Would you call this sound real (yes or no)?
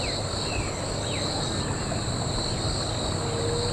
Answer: yes